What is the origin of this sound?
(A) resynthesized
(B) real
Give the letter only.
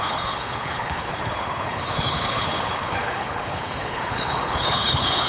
A